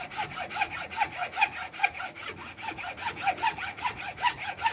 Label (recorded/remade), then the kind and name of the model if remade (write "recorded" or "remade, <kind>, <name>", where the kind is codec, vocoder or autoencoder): remade, vocoder, Vocos